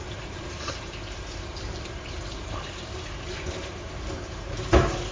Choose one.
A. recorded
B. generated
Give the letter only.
B